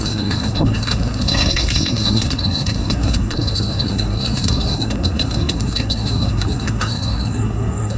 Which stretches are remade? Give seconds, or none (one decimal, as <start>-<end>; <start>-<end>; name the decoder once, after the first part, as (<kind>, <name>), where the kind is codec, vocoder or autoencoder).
0.0-8.0 (codec, SNAC)